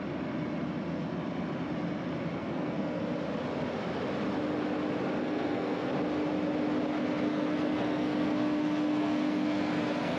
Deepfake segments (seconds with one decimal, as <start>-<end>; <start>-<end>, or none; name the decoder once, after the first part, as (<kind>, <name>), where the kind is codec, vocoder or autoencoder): 2.4-3.0 (codec, SNAC); 5.2-5.9; 7.0-10.2